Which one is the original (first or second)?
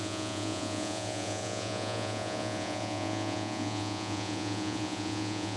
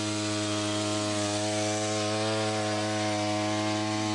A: second